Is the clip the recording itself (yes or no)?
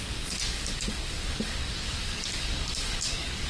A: no